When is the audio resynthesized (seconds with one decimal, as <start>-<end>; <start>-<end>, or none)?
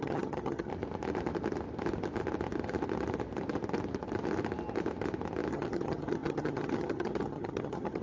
0.0-0.7; 5.5-8.0